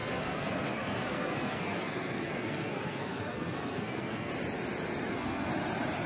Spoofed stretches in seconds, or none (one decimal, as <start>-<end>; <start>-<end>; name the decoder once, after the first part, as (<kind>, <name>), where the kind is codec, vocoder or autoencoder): 0.0-4.3 (codec, SNAC); 5.1-5.5